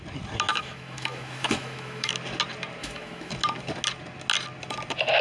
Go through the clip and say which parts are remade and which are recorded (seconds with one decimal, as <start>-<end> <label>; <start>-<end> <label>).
0.0-0.5 recorded; 0.5-2.1 remade; 2.1-2.8 recorded; 2.8-3.3 remade; 3.3-5.2 recorded